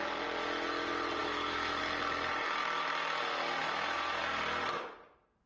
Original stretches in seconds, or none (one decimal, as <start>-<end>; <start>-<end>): 0.0-1.2; 1.8-3.6; 4.2-5.5